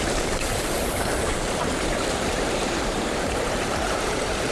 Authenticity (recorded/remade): remade